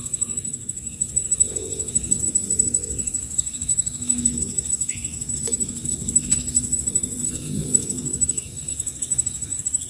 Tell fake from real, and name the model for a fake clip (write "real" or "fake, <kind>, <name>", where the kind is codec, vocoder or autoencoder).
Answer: fake, codec, SNAC